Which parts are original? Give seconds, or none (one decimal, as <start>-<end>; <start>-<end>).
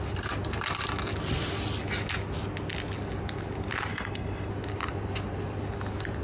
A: 0.0-3.9; 4.5-6.2